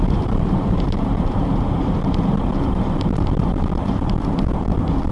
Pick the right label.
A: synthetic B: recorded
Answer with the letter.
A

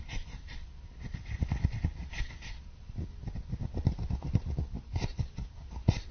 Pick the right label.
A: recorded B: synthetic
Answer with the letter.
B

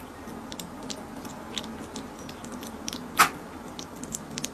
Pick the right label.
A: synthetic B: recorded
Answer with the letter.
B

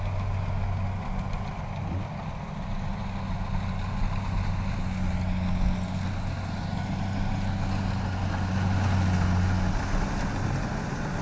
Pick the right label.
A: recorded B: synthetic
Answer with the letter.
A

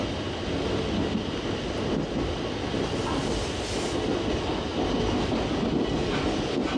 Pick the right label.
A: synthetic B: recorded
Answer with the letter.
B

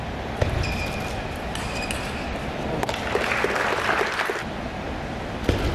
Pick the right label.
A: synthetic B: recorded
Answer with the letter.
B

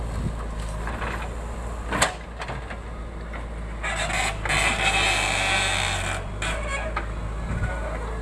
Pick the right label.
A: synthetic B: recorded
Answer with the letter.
B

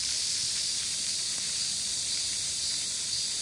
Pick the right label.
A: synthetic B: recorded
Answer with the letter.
A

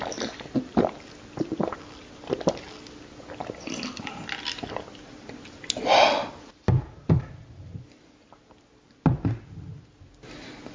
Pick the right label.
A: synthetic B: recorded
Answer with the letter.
B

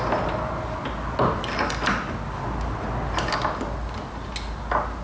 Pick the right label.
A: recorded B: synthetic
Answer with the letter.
A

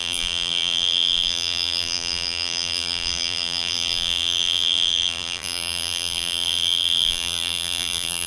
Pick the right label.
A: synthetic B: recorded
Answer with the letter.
A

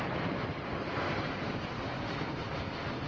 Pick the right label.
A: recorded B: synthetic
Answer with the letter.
B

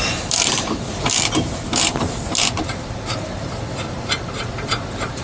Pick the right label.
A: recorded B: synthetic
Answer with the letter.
B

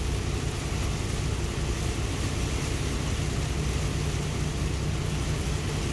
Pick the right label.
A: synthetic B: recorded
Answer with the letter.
B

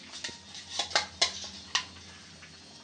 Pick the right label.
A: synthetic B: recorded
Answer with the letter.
B